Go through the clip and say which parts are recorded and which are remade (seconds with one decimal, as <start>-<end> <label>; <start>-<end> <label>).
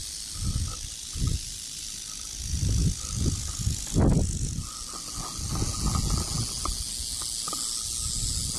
0.0-8.6 recorded